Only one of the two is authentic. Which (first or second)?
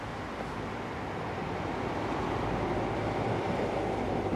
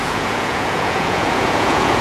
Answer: first